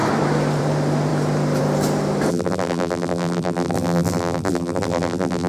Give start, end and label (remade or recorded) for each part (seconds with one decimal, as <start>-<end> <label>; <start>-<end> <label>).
0.0-2.3 recorded; 2.3-5.5 remade